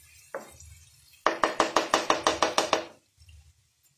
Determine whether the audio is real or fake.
real